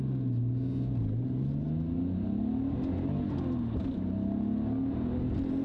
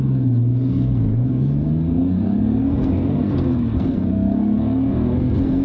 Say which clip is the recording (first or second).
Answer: first